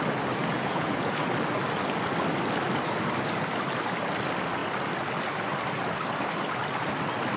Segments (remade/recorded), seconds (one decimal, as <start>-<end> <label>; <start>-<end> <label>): 0.0-0.4 recorded; 0.4-1.3 remade; 1.3-7.4 recorded